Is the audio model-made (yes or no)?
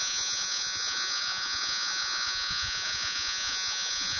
yes